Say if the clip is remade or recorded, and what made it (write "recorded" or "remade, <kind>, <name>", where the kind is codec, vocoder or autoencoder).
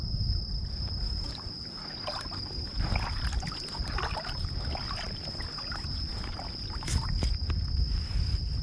recorded